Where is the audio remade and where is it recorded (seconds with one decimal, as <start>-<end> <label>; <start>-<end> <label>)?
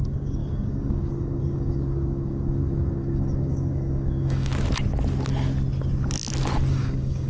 0.0-4.5 remade; 4.5-6.7 recorded; 6.7-7.3 remade